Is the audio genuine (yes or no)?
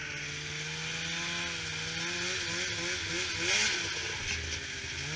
yes